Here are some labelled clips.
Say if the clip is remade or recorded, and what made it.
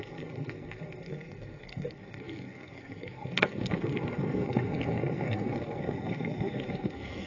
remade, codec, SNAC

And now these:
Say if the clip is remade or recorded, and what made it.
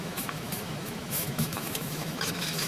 remade, autoencoder, DAC-VAE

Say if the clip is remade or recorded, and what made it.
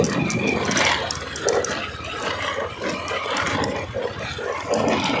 recorded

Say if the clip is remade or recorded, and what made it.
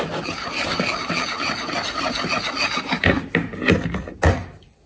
recorded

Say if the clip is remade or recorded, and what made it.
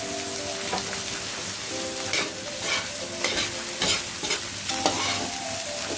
recorded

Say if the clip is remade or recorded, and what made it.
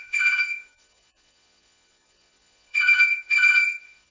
remade, vocoder, Vocos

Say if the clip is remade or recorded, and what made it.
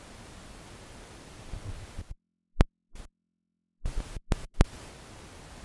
recorded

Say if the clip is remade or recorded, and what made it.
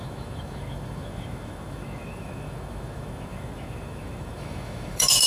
remade, autoencoder, DAC-VAE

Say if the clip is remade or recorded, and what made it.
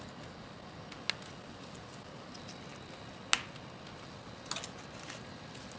recorded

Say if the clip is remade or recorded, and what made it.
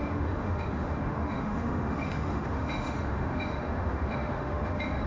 remade, autoencoder, DAC-VAE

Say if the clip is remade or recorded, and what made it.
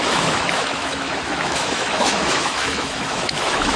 remade, autoencoder, DAC-VAE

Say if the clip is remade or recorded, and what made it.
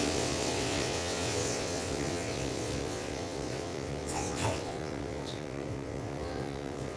remade, vocoder, WaveNeXt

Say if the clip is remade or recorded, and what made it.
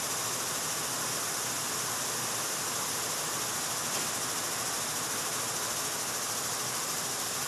recorded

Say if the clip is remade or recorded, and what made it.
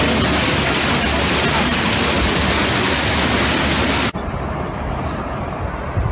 recorded